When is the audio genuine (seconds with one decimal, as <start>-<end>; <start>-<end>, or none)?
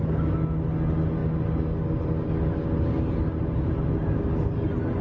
0.0-5.0